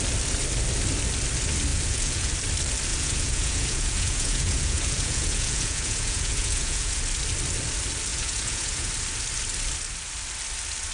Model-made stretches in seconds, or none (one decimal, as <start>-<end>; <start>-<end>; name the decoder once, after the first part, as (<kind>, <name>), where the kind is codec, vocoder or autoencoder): 1.7-2.3 (vocoder, Vocos); 2.9-7.0; 8.1-8.9